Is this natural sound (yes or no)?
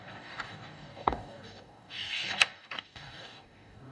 no